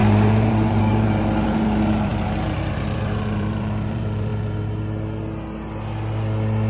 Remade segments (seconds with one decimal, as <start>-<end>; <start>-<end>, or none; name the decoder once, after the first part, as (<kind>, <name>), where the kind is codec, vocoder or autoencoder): 0.0-4.3 (vocoder, BigVGAN v2)